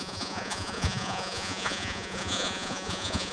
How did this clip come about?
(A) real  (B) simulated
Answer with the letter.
B